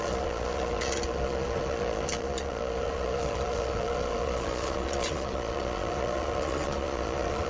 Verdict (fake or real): fake